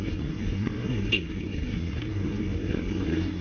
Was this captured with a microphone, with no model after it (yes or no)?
no